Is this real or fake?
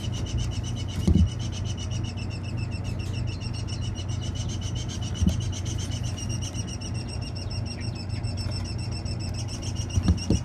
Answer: real